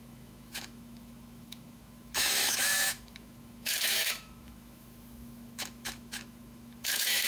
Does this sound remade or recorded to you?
remade